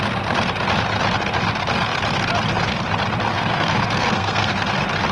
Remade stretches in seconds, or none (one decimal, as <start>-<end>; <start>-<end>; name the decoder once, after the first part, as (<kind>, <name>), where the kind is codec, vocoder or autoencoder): 3.3-4.6 (codec, SNAC)

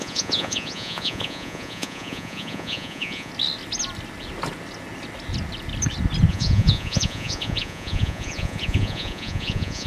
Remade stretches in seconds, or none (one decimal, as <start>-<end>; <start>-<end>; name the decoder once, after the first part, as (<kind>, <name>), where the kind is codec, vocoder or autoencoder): 0.0-3.3 (vocoder, Vocos); 6.3-9.9

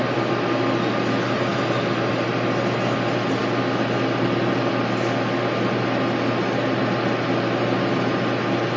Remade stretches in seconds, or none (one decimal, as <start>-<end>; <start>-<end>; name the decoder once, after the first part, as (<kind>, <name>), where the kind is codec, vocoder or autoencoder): none

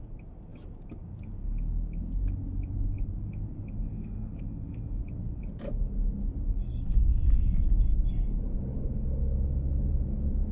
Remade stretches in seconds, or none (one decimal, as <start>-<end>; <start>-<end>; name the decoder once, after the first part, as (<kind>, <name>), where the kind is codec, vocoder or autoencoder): 3.9-5.0 (autoencoder, DAC-VAE)